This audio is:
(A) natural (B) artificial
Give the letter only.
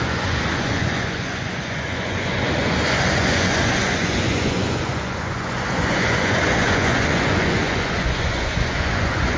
B